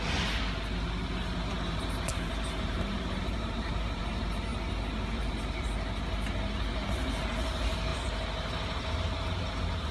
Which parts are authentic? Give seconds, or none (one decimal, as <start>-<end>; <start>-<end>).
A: 0.0-2.1; 4.0-9.9